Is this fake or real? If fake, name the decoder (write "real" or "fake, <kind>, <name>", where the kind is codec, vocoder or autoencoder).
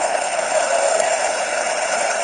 fake, codec, HILCodec